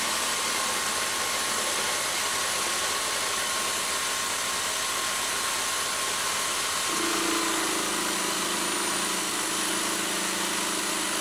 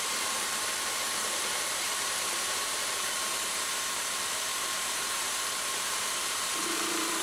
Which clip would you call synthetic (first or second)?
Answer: second